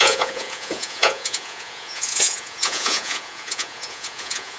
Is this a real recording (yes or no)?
no